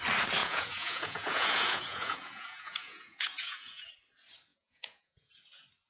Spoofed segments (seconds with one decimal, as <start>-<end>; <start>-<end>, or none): 0.4-3.9; 4.5-5.3